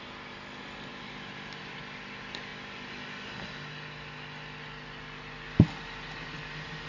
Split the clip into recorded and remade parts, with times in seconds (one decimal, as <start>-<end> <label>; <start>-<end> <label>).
0.0-6.9 recorded